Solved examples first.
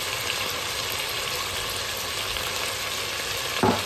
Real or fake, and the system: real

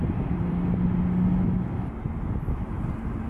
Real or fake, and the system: real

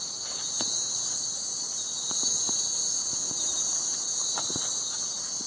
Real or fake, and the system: real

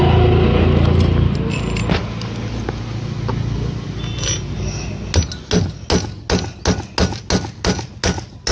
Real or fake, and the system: real